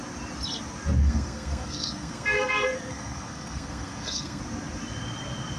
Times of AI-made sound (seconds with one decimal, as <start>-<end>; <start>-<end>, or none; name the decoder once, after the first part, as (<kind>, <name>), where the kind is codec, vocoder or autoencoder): 1.0-4.4 (codec, SNAC)